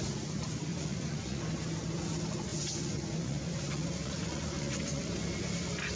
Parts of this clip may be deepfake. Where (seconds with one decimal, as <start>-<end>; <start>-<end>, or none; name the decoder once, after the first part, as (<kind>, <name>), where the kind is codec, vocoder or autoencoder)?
0.7-1.4 (vocoder, Vocos); 2.5-5.0